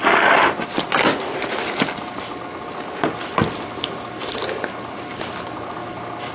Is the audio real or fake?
real